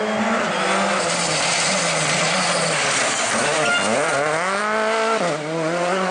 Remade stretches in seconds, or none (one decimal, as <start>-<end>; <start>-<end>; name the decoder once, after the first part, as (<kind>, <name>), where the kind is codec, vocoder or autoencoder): none